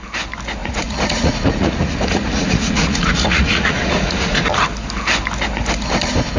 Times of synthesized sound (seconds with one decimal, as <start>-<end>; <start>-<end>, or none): 0.6-4.4